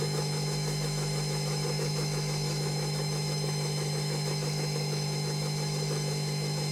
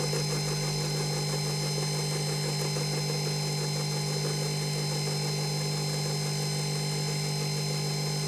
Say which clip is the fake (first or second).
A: first